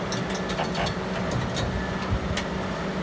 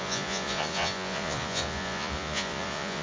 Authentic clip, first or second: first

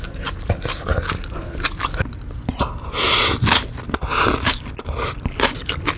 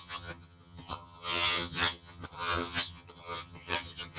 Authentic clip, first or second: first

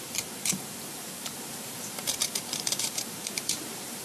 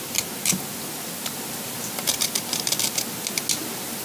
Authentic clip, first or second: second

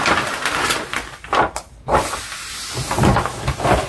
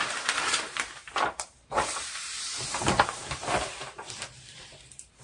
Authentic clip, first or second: first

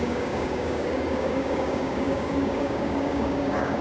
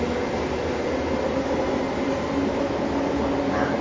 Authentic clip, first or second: second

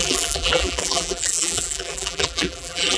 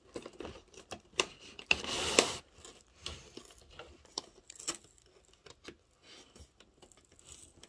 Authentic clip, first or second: second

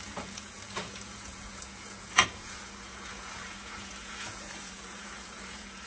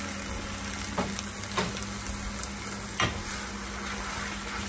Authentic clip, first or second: second